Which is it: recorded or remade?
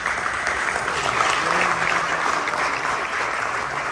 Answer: recorded